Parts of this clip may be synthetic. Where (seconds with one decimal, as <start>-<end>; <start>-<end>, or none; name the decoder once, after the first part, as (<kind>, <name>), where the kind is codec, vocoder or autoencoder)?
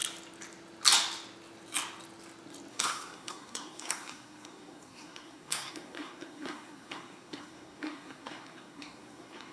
2.7-9.5 (codec, SNAC)